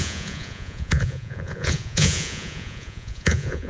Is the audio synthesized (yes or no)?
yes